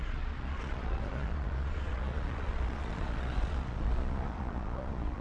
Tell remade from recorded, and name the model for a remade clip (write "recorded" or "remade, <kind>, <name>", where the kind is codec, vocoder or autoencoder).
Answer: remade, vocoder, Vocos